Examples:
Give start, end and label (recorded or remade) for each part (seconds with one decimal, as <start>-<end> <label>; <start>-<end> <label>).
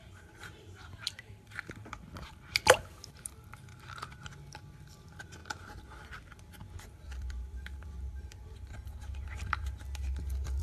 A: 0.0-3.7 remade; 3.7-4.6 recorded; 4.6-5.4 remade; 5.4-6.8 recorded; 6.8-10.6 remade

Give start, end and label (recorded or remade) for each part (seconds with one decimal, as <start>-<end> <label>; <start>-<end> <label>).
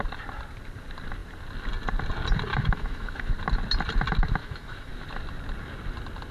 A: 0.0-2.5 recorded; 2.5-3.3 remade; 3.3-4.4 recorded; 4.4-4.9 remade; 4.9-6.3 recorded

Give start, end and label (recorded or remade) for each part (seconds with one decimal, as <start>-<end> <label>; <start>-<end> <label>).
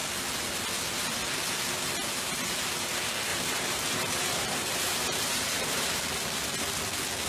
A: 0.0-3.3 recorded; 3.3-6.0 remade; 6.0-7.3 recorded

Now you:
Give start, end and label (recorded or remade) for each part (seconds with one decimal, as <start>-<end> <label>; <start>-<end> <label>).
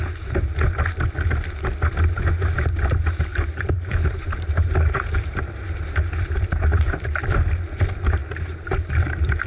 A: 0.0-3.3 recorded; 3.3-5.6 remade; 5.6-8.2 recorded; 8.2-9.5 remade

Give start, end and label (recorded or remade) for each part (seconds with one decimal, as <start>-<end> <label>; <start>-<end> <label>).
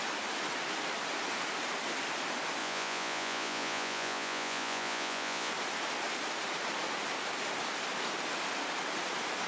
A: 0.0-2.6 recorded; 2.6-5.5 remade; 5.5-9.5 recorded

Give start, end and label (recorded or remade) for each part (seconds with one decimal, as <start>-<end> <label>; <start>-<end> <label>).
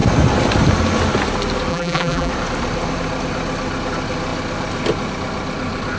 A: 0.0-1.7 recorded; 1.7-2.3 remade; 2.3-6.0 recorded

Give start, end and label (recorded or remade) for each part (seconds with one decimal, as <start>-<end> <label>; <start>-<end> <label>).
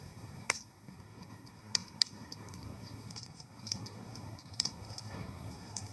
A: 0.0-5.9 remade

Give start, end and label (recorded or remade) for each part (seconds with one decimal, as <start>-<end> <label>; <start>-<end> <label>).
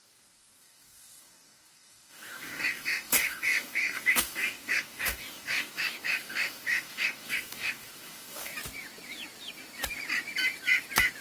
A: 0.0-8.5 remade; 8.5-11.2 recorded